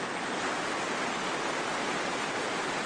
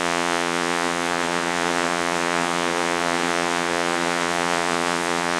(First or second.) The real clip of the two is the first